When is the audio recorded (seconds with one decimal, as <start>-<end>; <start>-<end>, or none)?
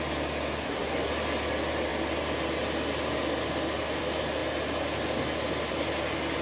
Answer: 0.0-0.6; 1.1-6.4